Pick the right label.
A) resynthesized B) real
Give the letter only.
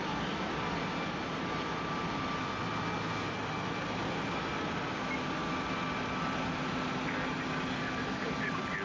B